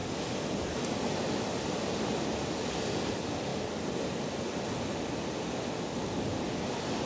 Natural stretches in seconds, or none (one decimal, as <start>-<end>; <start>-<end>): 0.0-7.1